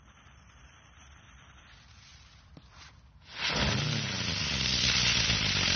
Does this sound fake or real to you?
real